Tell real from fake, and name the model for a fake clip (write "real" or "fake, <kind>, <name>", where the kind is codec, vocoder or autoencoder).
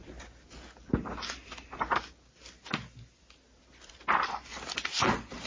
real